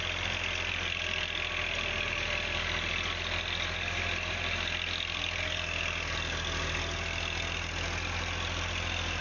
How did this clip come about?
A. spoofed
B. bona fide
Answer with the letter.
B